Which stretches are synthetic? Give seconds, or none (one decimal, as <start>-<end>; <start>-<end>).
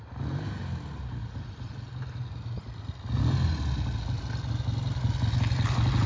none